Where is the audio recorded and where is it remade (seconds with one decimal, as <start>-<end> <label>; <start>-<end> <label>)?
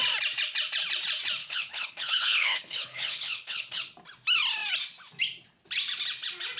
0.0-1.4 recorded; 1.4-3.8 remade; 3.8-6.6 recorded